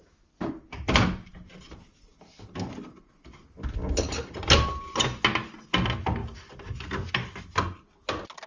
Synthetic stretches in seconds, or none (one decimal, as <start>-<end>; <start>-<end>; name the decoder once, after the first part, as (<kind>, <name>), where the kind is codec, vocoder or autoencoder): none

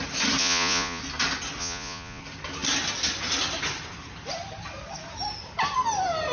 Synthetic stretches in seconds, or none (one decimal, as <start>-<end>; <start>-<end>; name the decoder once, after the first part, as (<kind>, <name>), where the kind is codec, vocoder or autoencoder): 0.4-1.0 (vocoder, Vocos); 1.6-2.2

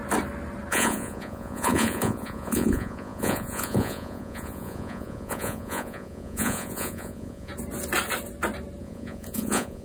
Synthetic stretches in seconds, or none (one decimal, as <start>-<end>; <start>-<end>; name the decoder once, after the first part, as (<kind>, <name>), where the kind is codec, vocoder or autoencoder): 0.7-7.5 (vocoder, Vocos); 8.8-9.8

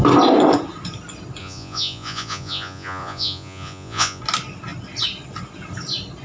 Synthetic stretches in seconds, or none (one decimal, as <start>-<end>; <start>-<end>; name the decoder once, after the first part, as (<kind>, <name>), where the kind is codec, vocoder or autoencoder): 1.4-4.2 (vocoder, Vocos)

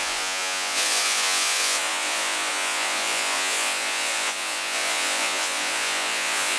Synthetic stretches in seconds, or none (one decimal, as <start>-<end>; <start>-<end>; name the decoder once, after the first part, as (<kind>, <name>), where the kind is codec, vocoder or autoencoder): 0.0-6.6 (vocoder, Vocos)